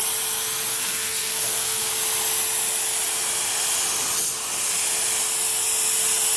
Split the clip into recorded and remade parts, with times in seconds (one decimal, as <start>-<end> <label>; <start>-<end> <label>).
0.0-0.7 recorded; 0.7-1.9 remade; 1.9-6.4 recorded